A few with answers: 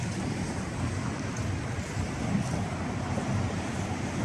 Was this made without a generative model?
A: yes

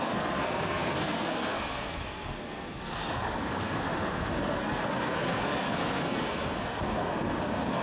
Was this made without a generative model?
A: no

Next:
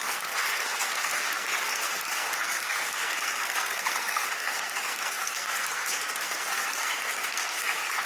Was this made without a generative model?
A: no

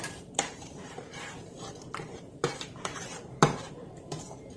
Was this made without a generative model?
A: no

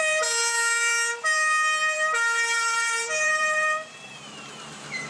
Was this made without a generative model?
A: no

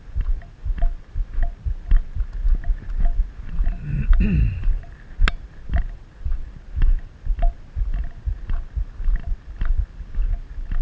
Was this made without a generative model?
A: yes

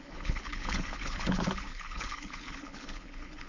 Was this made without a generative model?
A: no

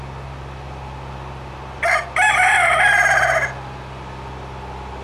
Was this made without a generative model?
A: yes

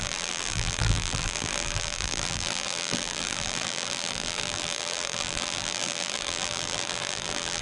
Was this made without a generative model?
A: no